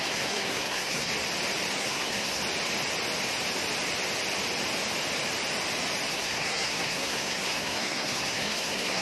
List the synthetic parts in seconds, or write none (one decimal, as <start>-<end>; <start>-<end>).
0.0-1.1; 1.8-2.4; 6.1-9.0